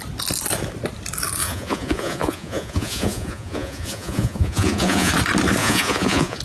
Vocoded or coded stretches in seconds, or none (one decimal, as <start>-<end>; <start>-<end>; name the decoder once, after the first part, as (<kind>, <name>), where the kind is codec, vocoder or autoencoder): 1.4-5.1 (vocoder, Vocos); 5.6-6.4